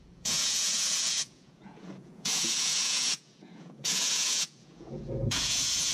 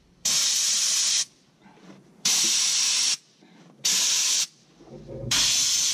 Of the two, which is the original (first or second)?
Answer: second